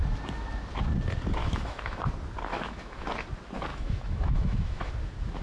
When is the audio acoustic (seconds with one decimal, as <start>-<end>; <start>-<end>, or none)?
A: 0.0-1.4; 2.0-2.5; 3.1-3.7; 4.9-5.4